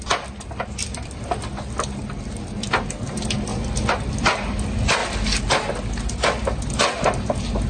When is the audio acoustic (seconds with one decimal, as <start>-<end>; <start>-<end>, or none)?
0.0-0.8; 1.5-7.7